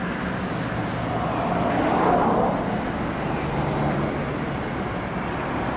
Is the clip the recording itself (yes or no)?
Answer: yes